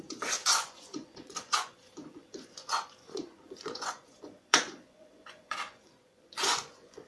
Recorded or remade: remade